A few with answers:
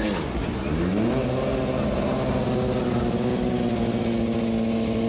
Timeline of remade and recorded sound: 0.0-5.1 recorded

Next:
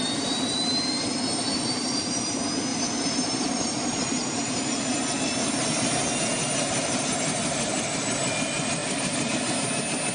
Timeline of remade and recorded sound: 0.0-2.1 remade; 2.1-2.7 recorded; 2.7-5.3 remade; 5.3-6.4 recorded; 6.4-8.3 remade; 8.3-8.8 recorded; 8.8-9.3 remade; 9.3-10.1 recorded

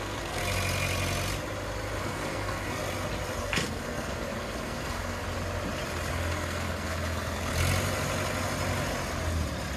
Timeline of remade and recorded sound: 0.0-0.4 remade; 0.4-2.0 recorded; 2.0-2.8 remade; 2.8-3.4 recorded; 3.4-5.2 remade; 5.2-6.1 recorded; 6.1-7.5 remade; 7.5-9.8 recorded

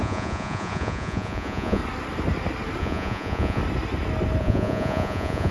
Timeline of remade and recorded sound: 0.0-1.8 remade; 1.8-2.8 recorded; 2.8-3.6 remade; 3.6-4.4 recorded; 4.4-5.5 remade

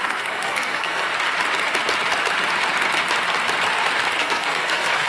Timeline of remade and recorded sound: 0.0-1.1 remade; 1.1-4.2 recorded; 4.2-5.1 remade

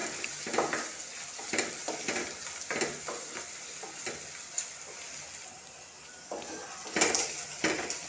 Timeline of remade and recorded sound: 0.0-8.1 recorded

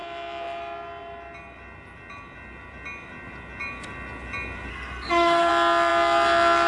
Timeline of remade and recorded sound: 0.0-4.7 recorded; 4.7-5.5 remade; 5.5-6.7 recorded

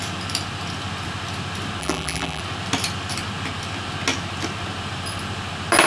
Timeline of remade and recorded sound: 0.0-1.8 recorded; 1.8-2.4 remade; 2.4-5.9 recorded